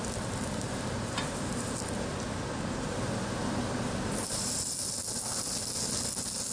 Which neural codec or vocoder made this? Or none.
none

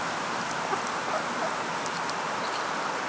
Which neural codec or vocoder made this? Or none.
none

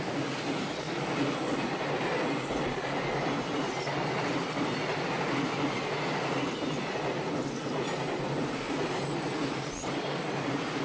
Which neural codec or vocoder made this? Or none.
none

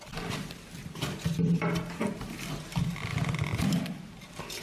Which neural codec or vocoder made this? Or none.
none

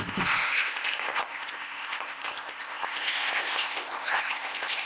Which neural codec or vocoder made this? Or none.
codec, ZipCodec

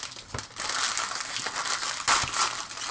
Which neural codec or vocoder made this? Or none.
none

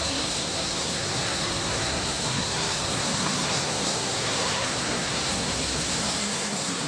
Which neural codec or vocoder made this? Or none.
codec, SNAC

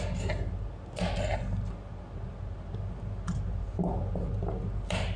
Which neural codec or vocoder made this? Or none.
none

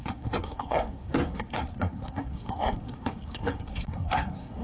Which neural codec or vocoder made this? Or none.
codec, SNAC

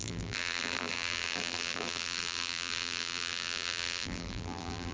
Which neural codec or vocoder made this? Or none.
vocoder, BigVGAN v2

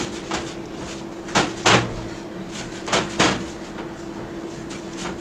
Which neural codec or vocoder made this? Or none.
none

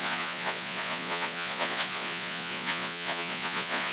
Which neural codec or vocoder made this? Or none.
vocoder, Vocos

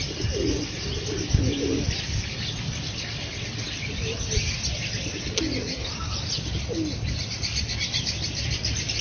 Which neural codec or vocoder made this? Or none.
none